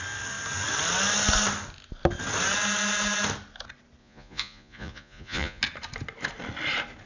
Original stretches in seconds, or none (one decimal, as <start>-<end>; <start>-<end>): 0.0-4.0; 5.6-7.1